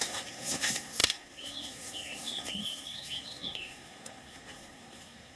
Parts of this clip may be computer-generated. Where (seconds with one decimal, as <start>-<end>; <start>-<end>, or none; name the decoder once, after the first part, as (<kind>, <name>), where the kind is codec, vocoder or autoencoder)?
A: 0.0-5.4 (codec, SNAC)